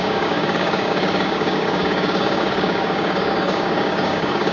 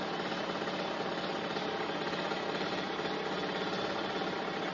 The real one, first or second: second